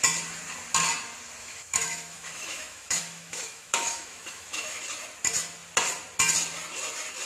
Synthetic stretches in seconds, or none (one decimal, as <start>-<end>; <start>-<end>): 1.4-4.8